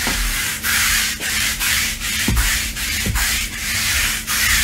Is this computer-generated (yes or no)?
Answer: yes